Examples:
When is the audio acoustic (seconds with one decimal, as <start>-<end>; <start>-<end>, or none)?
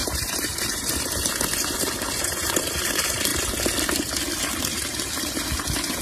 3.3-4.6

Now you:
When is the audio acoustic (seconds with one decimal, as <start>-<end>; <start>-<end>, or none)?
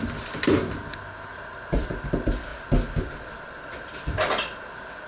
0.0-1.3; 1.9-5.1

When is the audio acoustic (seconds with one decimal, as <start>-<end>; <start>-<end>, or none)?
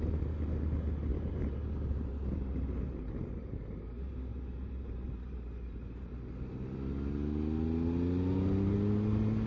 0.0-1.1; 3.6-4.3; 6.1-9.5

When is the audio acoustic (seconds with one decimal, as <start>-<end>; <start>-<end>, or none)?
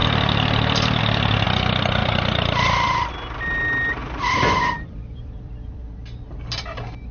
1.0-2.0; 3.1-4.0; 5.9-7.1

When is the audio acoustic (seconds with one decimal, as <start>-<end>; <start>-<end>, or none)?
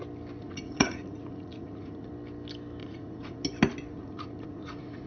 0.0-0.4; 2.1-2.8; 3.4-3.9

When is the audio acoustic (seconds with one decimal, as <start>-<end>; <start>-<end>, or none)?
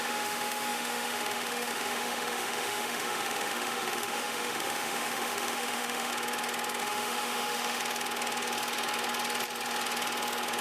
6.1-6.8; 7.8-10.6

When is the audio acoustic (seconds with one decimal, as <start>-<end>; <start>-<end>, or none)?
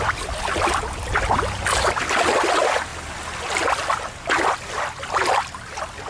0.0-6.1